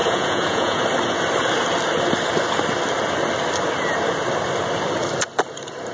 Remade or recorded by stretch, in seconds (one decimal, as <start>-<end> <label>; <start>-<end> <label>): 0.0-0.8 remade; 0.8-5.9 recorded